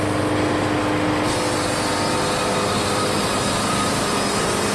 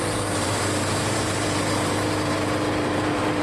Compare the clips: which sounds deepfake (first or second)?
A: second